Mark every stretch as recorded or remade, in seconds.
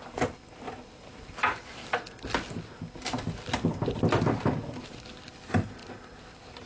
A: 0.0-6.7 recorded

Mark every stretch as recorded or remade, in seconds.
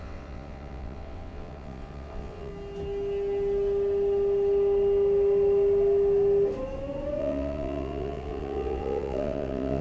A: 0.0-2.5 remade; 2.5-7.2 recorded; 7.2-9.8 remade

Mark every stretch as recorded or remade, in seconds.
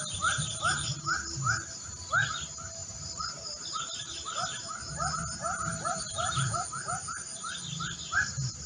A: 0.0-2.8 recorded; 2.8-3.7 remade; 3.7-8.7 recorded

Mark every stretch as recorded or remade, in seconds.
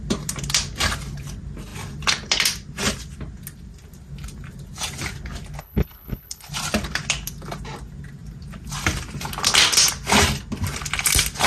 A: 0.0-5.6 recorded; 5.6-6.5 remade; 6.5-11.5 recorded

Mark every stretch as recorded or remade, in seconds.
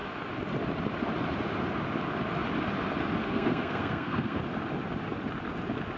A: 0.0-3.2 recorded; 3.2-4.4 remade; 4.4-6.0 recorded